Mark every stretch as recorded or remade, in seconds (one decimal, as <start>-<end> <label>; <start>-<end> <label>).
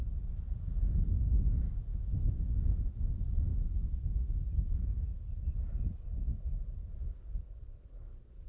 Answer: 0.0-1.9 recorded; 1.9-3.1 remade; 3.1-8.5 recorded